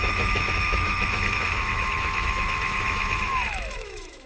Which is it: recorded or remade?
remade